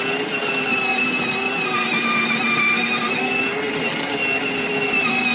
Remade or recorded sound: recorded